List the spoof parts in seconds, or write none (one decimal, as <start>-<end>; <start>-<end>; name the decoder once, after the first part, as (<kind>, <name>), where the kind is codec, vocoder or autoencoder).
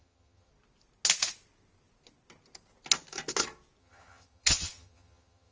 0.0-0.5 (vocoder, HiFi-GAN); 3.8-5.5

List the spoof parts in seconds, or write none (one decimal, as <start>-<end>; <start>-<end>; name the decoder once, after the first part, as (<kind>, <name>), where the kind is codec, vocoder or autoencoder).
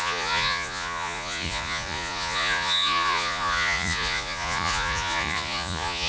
0.0-6.1 (vocoder, Vocos)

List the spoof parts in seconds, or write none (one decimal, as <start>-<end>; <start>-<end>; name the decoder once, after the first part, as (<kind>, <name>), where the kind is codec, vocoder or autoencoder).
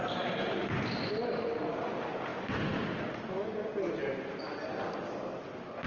none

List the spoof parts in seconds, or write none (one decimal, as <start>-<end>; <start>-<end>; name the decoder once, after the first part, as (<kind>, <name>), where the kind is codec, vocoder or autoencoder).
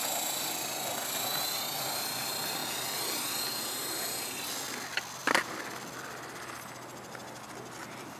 none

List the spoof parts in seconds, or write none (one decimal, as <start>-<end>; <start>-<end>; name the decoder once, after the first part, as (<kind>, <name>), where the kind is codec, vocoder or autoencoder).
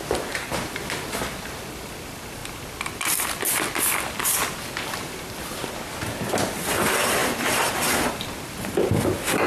none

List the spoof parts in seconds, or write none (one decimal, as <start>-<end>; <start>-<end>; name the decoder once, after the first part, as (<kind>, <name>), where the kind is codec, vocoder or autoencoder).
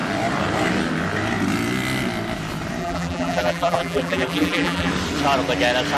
2.8-4.9 (vocoder, BigVGAN v2)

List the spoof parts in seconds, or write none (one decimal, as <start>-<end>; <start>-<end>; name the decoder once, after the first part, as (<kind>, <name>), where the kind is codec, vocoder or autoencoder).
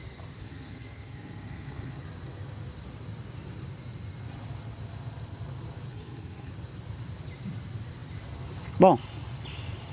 0.4-2.0 (codec, SNAC); 5.9-6.5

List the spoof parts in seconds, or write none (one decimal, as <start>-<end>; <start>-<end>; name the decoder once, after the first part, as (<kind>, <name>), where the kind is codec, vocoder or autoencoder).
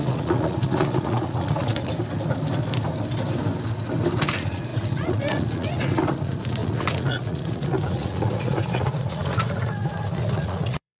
0.0-1.9 (vocoder, Vocos); 4.2-11.0